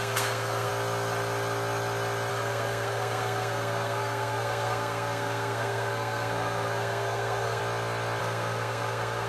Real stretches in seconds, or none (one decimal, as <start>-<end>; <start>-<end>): 0.7-2.3; 7.6-8.2